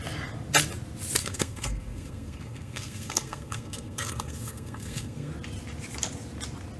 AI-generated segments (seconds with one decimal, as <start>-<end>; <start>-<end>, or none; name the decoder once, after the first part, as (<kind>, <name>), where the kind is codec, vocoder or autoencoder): 1.2-5.3 (codec, SNAC)